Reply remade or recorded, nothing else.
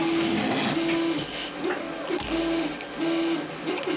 recorded